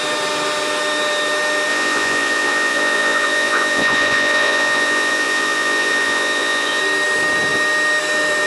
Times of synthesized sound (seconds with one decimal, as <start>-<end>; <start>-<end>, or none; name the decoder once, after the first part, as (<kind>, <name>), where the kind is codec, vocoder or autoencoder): 1.7-6.8 (vocoder, Vocos)